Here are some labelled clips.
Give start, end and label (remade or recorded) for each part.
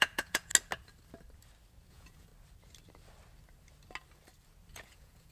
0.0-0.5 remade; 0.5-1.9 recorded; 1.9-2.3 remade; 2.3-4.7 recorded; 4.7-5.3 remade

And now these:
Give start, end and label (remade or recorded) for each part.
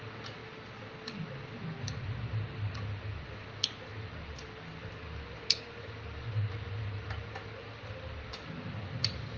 0.0-9.4 recorded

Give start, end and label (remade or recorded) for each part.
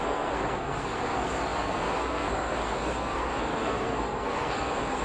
0.0-5.0 remade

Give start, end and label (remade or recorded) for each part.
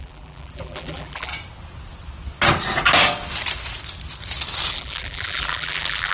0.0-1.3 remade; 1.3-4.7 recorded; 4.7-6.1 remade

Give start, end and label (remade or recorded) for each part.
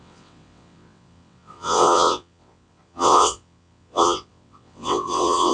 0.0-5.5 remade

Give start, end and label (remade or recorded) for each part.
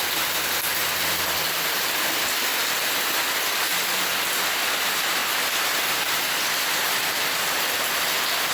0.0-8.5 recorded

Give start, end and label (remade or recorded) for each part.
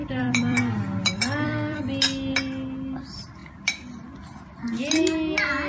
0.0-0.6 remade; 0.6-1.0 recorded; 1.0-1.8 remade; 1.8-5.7 recorded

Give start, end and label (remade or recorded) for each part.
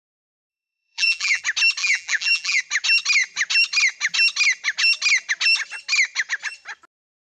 0.0-0.5 recorded; 0.5-1.4 remade; 1.4-1.8 recorded; 1.8-2.6 remade; 2.6-7.3 recorded